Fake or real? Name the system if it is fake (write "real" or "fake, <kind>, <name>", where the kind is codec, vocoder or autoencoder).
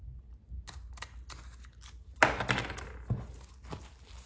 real